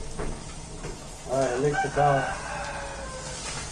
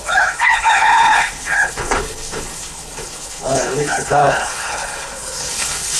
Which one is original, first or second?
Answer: first